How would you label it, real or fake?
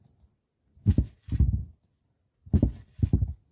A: real